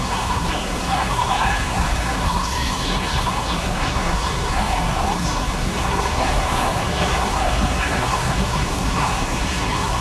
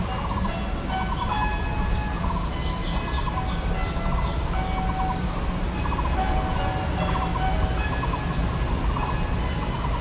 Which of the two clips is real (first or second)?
second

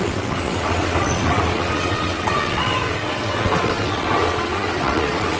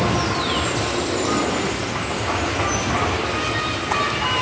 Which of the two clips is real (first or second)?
second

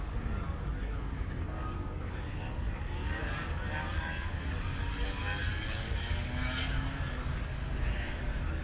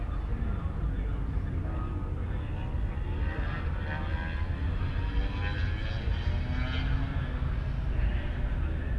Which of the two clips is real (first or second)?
second